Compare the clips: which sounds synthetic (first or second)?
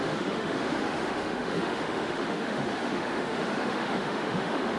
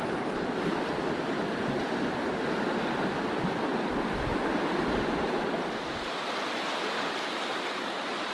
first